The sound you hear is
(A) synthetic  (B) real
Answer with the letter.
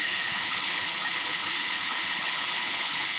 A